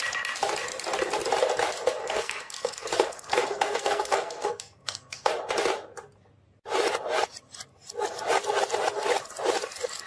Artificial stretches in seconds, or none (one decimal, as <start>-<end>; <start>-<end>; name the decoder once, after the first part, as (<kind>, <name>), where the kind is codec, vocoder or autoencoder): 2.0-5.3 (codec, SNAC)